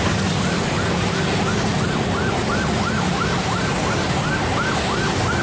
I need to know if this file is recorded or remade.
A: recorded